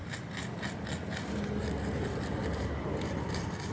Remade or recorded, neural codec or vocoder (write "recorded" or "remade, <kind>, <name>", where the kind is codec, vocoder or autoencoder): recorded